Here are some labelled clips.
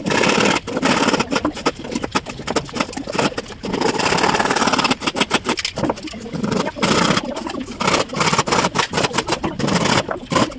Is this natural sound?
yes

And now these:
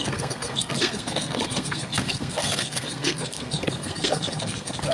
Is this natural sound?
no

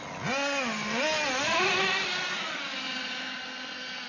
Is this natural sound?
yes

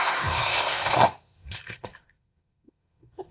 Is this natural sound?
no